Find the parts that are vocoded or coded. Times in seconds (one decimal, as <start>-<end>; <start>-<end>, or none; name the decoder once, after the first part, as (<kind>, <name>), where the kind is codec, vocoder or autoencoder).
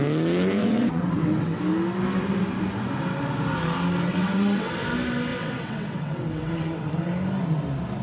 0.6-1.6 (vocoder, WaveNeXt); 4.1-4.7; 5.3-6.9